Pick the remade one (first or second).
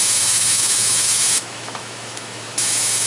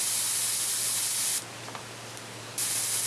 first